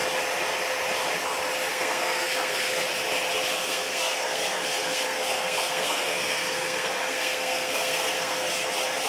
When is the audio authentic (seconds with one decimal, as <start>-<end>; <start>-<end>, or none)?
0.0-1.7; 2.8-3.6; 8.7-9.1